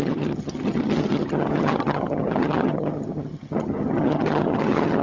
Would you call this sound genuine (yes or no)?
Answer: no